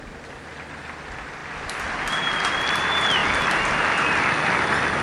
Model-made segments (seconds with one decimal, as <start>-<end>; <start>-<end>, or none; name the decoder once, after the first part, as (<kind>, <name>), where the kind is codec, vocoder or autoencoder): none